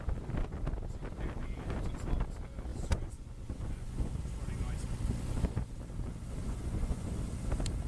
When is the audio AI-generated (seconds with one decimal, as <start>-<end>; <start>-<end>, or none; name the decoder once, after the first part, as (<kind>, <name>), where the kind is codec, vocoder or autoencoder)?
2.7-4.1 (vocoder, Vocos); 6.4-7.1